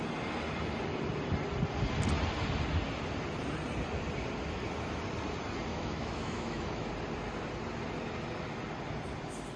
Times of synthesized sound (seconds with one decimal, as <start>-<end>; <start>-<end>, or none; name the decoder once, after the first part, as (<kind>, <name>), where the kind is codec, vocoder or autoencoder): 5.7-6.9 (autoencoder, DAC-VAE)